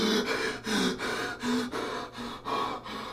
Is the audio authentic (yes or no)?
yes